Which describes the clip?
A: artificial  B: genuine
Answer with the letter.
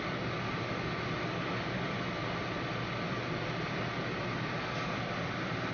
B